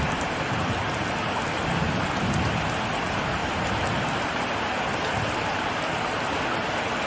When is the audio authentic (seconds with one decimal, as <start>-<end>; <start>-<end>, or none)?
0.0-7.1